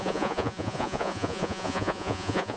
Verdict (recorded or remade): remade